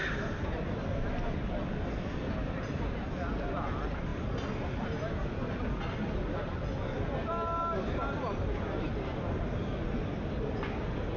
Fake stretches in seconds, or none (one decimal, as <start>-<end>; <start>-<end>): none

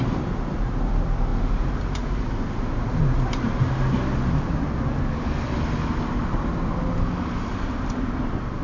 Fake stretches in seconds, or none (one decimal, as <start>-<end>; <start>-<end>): none

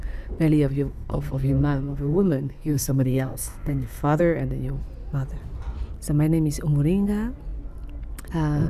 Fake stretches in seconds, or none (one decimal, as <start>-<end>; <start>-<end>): 0.9-4.2

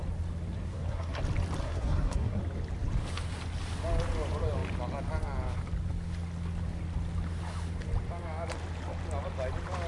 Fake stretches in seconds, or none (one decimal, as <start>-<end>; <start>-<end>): 0.6-1.2; 1.6-2.4

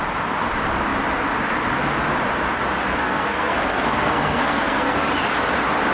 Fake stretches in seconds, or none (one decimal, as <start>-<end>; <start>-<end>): 2.9-5.1

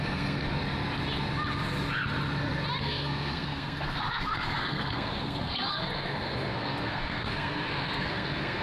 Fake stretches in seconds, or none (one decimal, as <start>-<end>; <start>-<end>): 0.0-0.4; 2.8-8.6